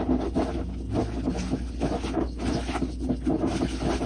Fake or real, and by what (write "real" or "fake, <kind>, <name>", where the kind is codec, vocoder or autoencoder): real